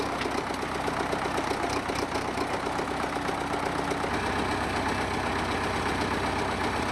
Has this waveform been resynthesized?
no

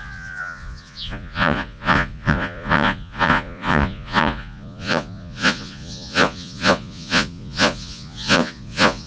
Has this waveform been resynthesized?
yes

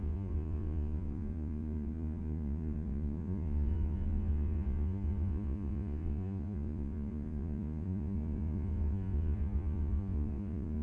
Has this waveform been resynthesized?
yes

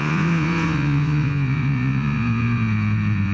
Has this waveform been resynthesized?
yes